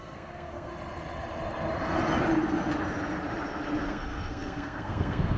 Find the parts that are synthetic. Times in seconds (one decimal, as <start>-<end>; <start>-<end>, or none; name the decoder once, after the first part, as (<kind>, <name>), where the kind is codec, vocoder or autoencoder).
0.0-0.7 (codec, SNAC); 3.9-5.4

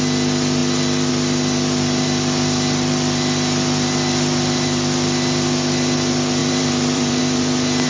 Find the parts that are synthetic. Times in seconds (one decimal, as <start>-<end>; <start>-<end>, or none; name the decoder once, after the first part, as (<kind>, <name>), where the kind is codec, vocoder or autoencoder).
6.4-7.2 (vocoder, BigVGAN v2)

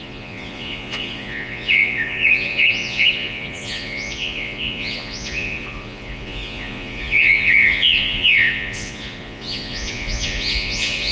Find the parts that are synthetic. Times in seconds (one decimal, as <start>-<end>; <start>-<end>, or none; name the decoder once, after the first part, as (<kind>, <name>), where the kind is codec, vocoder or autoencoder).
0.0-11.1 (vocoder, Vocos)

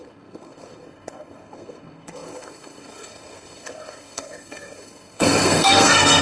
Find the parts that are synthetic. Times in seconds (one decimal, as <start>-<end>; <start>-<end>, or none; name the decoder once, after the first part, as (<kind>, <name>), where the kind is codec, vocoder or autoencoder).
0.0-6.2 (codec, SNAC)

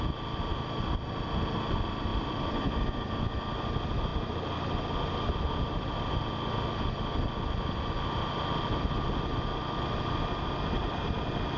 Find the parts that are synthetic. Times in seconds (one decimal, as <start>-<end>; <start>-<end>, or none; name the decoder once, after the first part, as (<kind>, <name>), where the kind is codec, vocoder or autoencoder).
0.5-1.1 (vocoder, BigVGAN v2); 2.1-3.2